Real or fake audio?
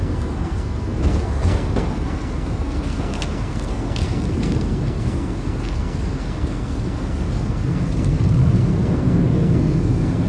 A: fake